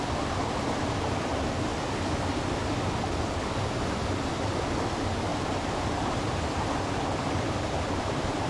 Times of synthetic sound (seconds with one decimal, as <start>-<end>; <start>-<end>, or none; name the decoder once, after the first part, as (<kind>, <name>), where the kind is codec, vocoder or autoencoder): 5.3-6.9 (vocoder, BigVGAN v2)